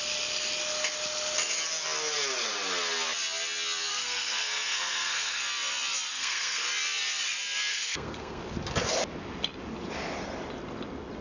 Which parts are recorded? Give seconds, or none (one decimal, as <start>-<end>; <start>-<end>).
0.0-3.9; 5.4-6.1; 6.6-7.7; 8.4-11.2